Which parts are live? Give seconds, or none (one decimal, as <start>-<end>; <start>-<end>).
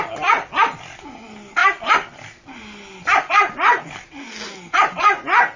0.0-5.6